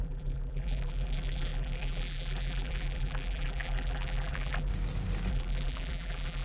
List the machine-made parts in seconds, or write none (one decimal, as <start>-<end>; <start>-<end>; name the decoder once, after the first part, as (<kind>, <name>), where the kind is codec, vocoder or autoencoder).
0.0-4.7 (vocoder, BigVGAN v2); 5.3-6.4